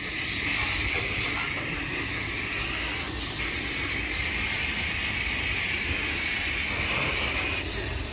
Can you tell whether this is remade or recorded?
recorded